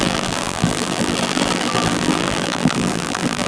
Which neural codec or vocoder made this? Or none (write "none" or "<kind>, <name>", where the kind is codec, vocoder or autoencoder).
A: vocoder, BigVGAN v2